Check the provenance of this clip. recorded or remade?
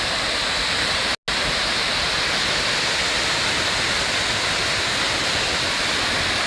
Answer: recorded